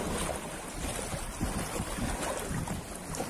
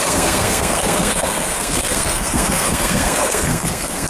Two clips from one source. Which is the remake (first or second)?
second